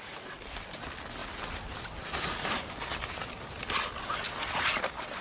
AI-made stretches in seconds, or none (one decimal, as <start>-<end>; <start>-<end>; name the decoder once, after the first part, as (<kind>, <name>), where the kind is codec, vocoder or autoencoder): none